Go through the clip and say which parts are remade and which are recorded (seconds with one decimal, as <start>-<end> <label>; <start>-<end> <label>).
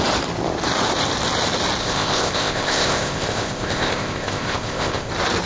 0.0-1.8 recorded; 1.8-5.1 remade; 5.1-5.5 recorded